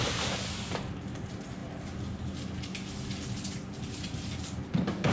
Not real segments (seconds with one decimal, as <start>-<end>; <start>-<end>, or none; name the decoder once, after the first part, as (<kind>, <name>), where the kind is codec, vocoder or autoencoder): none

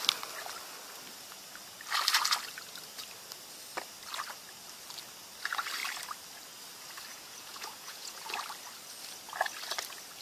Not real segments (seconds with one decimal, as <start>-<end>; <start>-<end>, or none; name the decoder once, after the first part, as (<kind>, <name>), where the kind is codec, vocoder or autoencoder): 7.1-8.3 (vocoder, Vocos)

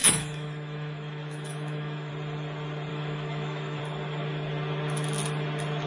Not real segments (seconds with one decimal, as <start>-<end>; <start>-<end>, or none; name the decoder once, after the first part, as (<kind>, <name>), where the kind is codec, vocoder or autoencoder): 0.0-2.1 (autoencoder, DAC-VAE); 2.9-3.8

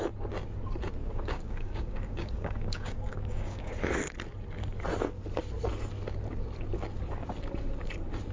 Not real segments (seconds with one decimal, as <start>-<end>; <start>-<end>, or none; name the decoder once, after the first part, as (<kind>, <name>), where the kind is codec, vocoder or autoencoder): 1.0-3.7 (codec, DAC)

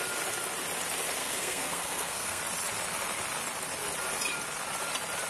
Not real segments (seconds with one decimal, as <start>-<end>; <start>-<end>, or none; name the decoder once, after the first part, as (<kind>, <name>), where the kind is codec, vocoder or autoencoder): 1.2-2.4 (codec, SNAC)

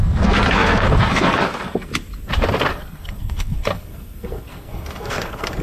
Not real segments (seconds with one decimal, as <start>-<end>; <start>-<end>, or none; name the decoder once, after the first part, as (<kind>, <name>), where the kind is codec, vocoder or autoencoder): 0.0-1.9 (codec, SNAC); 2.7-5.6

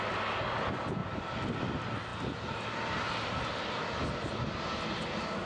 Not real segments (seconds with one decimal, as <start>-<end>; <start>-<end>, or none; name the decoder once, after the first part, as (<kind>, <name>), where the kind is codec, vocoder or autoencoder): none